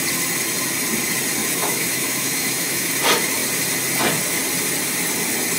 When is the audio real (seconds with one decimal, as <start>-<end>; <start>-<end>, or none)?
0.0-1.4; 2.9-5.6